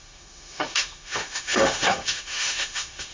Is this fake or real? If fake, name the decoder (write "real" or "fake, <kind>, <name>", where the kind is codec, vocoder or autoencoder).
fake, autoencoder, DAC-VAE